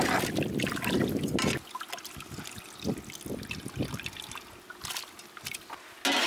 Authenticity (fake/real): real